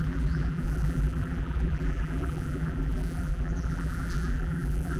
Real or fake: fake